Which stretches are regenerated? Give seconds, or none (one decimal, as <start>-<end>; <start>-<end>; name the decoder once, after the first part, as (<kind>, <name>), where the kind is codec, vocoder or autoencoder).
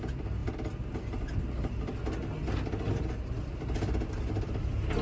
none